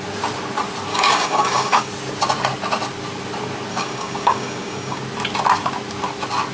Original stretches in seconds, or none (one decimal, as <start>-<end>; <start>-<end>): 0.0-0.9; 1.9-3.7; 5.0-6.5